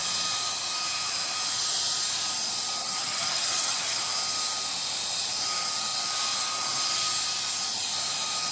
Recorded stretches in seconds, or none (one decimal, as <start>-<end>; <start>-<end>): 0.0-2.8; 4.0-8.5

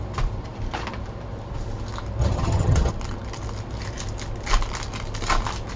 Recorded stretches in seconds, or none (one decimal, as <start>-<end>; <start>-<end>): 0.0-2.2; 2.9-5.8